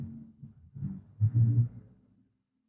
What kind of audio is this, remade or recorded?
remade